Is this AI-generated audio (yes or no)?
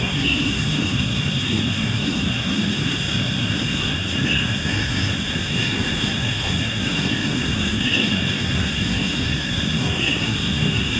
yes